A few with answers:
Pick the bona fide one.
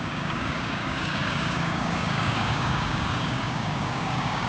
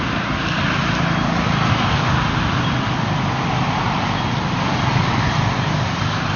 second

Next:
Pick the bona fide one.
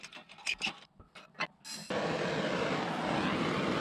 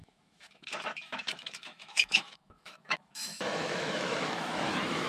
first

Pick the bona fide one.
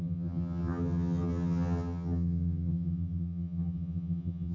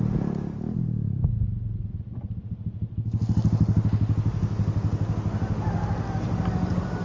second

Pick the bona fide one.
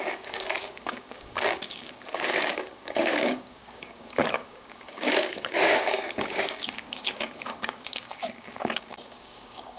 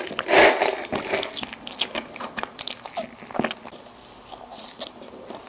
second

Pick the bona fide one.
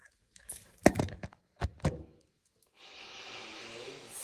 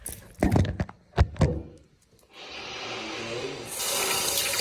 second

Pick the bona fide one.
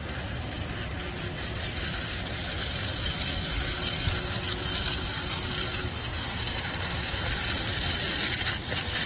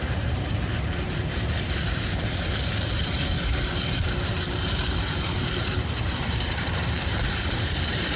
first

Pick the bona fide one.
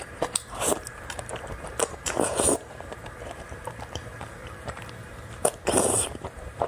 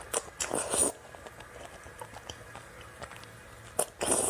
second